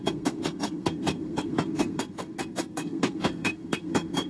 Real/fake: fake